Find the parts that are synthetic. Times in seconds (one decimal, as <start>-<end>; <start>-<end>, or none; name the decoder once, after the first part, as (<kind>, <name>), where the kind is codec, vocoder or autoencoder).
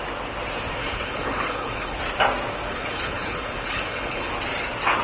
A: 0.8-2.0 (codec, HILCodec); 2.7-4.3